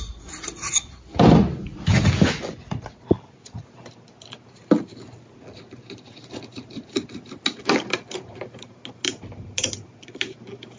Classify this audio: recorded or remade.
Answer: recorded